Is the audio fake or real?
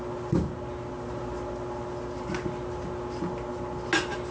real